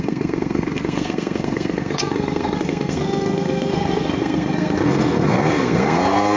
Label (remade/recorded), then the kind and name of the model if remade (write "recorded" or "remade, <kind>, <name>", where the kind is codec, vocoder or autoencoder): remade, codec, SNAC